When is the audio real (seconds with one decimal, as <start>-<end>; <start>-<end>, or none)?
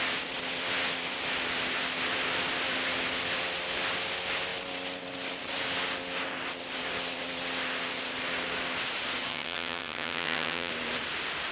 0.0-9.3; 10.7-11.5